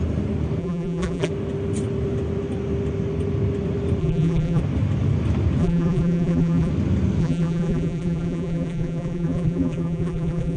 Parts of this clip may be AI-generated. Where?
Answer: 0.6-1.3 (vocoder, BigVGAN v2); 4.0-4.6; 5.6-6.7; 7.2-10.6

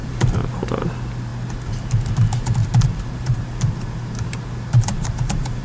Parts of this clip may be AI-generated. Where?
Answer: 0.0-0.9 (vocoder, BigVGAN v2); 2.6-5.6

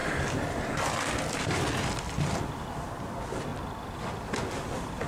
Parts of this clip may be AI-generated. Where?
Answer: 0.0-3.1 (vocoder, BigVGAN v2)

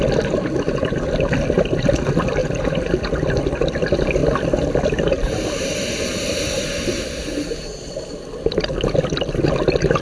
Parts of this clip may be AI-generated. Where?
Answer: 2.4-2.9 (vocoder, BigVGAN v2)

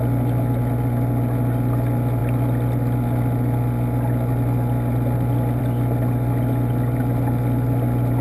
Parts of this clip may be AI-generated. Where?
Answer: none

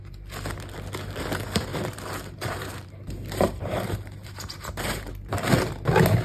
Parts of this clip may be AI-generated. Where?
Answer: 1.7-5.1 (vocoder, BigVGAN v2)

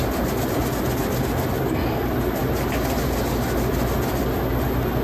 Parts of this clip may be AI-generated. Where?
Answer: none

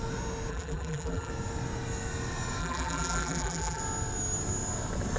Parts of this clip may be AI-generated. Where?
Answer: 0.5-1.3 (vocoder, BigVGAN v2); 2.6-3.8